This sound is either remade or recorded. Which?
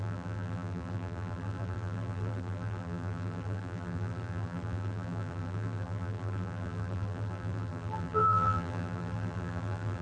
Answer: remade